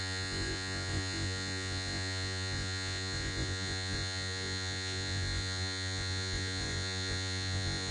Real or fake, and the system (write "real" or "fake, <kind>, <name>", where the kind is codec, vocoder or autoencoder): fake, vocoder, Vocos